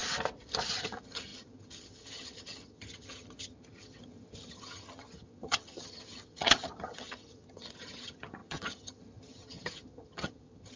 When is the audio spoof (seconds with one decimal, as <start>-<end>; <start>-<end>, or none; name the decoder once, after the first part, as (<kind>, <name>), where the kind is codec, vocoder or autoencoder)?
0.7-10.8 (vocoder, HiFi-GAN)